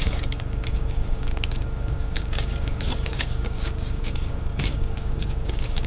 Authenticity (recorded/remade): remade